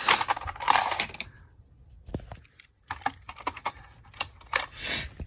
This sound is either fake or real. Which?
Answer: real